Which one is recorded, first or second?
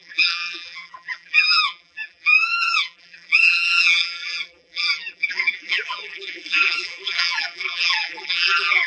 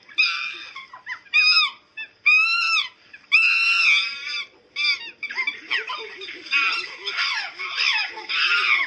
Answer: second